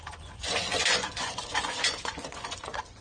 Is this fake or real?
fake